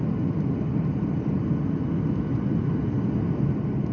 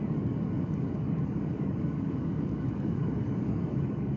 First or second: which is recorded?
first